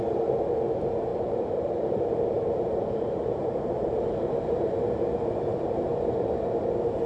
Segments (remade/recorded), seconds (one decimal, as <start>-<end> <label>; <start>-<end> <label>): 0.0-1.1 recorded; 1.1-4.9 remade; 4.9-5.5 recorded; 5.5-6.6 remade; 6.6-7.1 recorded